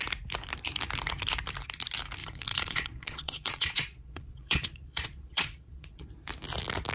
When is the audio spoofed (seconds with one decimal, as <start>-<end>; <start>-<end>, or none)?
2.2-6.1